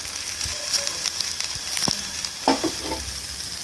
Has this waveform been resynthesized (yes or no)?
no